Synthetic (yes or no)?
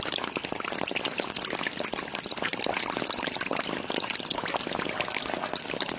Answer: no